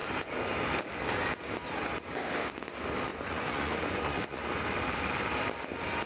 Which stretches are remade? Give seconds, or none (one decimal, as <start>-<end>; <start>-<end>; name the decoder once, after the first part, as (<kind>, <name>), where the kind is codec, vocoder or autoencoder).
3.1-4.6 (vocoder, Vocos)